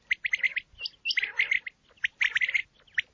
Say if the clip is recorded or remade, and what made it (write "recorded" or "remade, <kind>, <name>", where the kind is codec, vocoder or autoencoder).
recorded